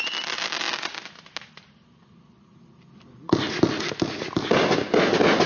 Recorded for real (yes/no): yes